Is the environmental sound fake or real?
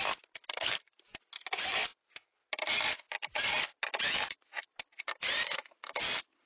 real